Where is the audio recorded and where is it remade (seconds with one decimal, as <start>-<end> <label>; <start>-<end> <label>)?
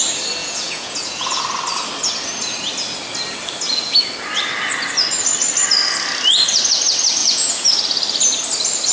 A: 0.0-0.4 recorded; 0.4-1.4 remade; 1.4-7.2 recorded; 7.2-7.7 remade; 7.7-8.9 recorded